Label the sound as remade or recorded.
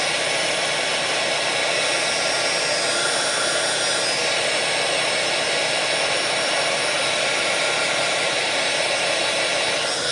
recorded